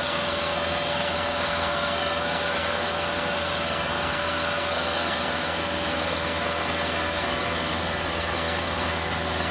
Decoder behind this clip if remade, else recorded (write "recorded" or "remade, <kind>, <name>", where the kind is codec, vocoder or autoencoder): remade, codec, SNAC